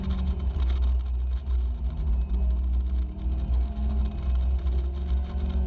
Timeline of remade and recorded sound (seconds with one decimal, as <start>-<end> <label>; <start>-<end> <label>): 0.0-3.5 recorded; 3.5-4.0 remade; 4.0-5.7 recorded